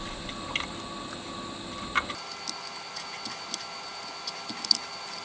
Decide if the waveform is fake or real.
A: real